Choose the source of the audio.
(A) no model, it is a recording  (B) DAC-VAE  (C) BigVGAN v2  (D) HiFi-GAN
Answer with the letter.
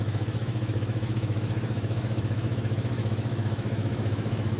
B